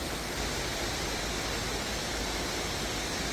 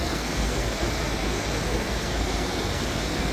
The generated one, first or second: second